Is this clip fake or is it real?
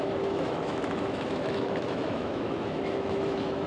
fake